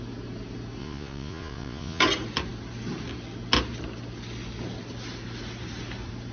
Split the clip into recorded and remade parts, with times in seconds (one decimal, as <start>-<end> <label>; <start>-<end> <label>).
0.0-0.8 recorded; 0.8-2.0 remade; 2.0-6.3 recorded